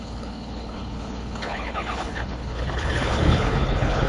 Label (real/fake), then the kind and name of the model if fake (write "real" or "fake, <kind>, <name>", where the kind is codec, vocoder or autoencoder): fake, codec, HILCodec